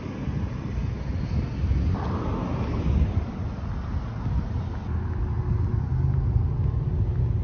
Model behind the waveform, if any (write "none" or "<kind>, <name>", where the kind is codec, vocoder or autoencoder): none